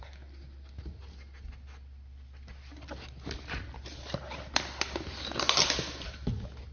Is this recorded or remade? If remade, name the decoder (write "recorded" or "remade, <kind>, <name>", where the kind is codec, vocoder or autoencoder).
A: recorded